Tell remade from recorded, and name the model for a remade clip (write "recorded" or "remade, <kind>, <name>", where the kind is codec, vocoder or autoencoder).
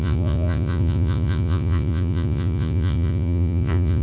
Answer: remade, vocoder, Vocos